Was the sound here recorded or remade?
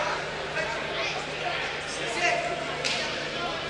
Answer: recorded